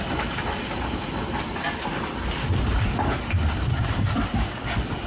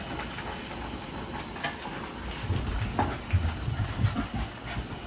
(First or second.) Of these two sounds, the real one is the second